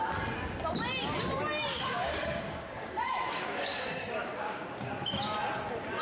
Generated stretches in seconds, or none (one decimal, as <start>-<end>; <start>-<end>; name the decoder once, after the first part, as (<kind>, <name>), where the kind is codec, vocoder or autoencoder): 1.7-5.3 (codec, DAC)